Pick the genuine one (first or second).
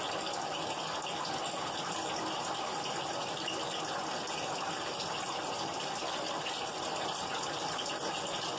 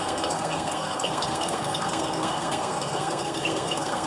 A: first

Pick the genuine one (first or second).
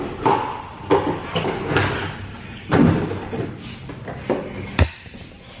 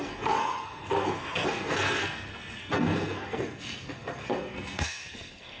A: first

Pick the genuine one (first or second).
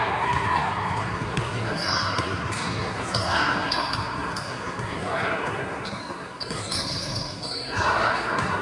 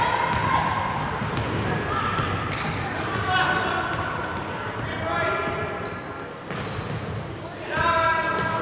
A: second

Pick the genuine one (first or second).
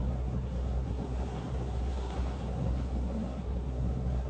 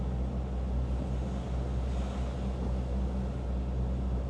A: second